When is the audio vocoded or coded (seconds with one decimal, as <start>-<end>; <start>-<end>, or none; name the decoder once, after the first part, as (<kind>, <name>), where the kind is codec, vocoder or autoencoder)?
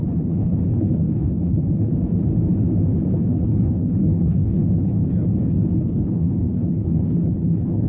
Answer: 0.0-1.9 (codec, HILCodec); 3.1-4.6; 5.8-7.9